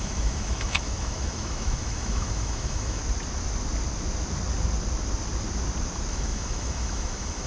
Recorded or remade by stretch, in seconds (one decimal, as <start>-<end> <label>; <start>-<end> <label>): 0.0-3.0 remade; 3.0-6.1 recorded; 6.1-7.5 remade